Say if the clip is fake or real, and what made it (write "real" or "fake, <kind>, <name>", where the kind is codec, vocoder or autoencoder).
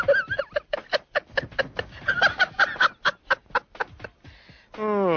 real